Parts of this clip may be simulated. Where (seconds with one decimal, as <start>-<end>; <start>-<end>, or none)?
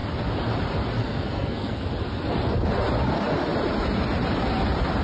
1.0-1.9